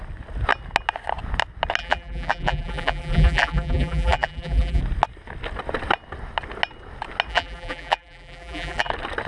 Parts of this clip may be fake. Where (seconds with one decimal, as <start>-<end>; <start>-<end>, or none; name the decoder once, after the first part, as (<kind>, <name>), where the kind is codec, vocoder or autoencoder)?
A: 1.8-4.8 (vocoder, BigVGAN v2); 7.3-8.9